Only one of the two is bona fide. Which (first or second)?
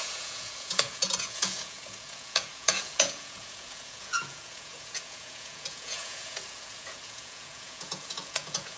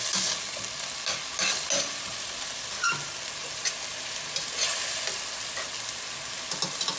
second